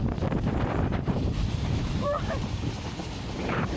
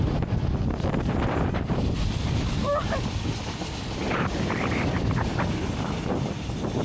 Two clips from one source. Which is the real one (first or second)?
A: second